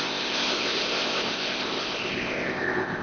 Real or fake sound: fake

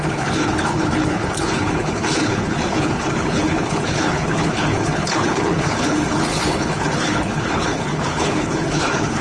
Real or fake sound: fake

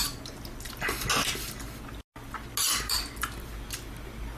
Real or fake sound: real